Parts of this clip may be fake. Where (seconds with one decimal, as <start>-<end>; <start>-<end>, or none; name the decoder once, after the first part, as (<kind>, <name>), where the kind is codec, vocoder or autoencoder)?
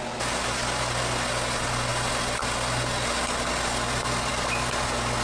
none